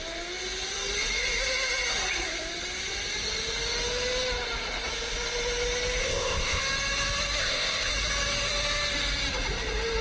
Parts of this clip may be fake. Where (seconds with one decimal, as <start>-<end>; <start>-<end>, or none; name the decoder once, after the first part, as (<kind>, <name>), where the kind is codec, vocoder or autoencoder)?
6.0-6.6 (codec, ZipCodec); 7.4-7.9